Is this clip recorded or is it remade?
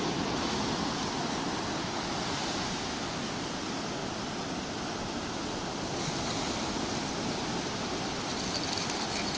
recorded